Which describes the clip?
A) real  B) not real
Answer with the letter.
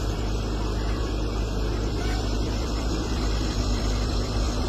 B